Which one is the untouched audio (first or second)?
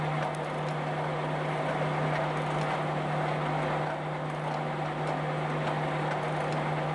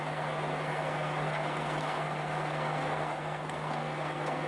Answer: first